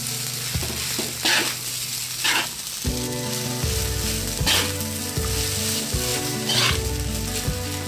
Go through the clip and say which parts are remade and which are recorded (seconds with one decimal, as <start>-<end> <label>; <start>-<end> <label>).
0.0-6.1 recorded; 6.1-6.7 remade; 6.7-7.9 recorded